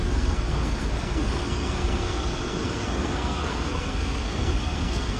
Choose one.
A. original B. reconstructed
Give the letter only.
B